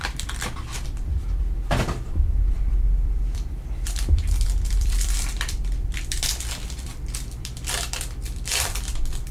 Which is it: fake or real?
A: fake